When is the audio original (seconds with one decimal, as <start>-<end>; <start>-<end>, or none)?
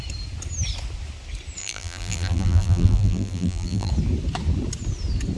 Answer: 0.0-1.6; 3.9-5.4